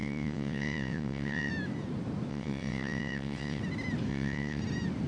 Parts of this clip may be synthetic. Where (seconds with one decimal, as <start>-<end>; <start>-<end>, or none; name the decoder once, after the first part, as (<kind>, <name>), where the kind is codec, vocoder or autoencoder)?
0.0-1.5 (vocoder, WaveNeXt); 2.3-3.6; 4.1-4.6